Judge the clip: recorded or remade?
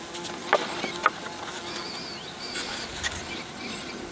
recorded